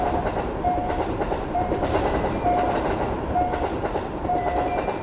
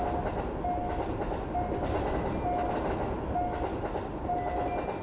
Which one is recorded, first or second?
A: second